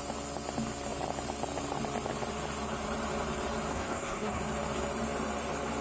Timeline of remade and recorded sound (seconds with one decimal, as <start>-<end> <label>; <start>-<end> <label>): 0.0-3.7 recorded; 3.7-4.4 remade; 4.4-5.8 recorded